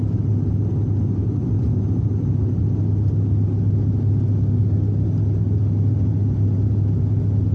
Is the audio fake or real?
real